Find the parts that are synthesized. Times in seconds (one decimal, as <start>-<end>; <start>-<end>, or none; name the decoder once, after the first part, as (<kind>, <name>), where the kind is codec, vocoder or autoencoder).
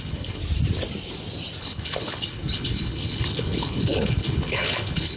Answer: 0.0-0.4 (codec, HILCodec); 1.6-5.2